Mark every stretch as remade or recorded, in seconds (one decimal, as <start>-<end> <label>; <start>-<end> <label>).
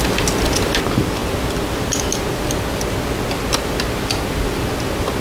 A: 0.0-5.2 recorded